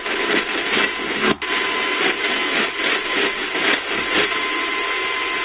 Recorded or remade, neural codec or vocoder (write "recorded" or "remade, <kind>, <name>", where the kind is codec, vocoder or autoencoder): recorded